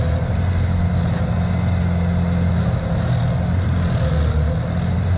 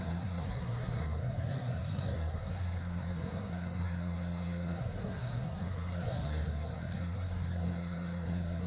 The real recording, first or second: first